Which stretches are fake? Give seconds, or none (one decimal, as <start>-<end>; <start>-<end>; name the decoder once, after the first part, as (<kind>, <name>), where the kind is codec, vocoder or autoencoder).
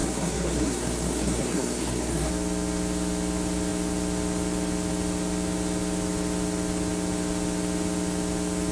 0.0-2.3 (codec, SNAC)